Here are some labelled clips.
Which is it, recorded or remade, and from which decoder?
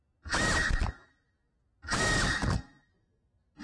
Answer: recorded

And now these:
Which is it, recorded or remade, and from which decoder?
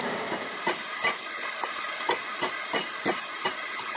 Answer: recorded